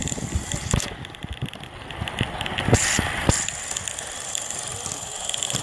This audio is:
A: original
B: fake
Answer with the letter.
A